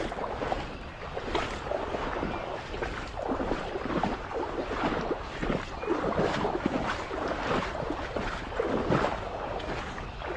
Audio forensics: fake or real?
real